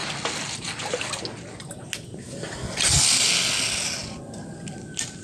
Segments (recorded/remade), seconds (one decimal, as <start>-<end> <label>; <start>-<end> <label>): 0.0-5.2 recorded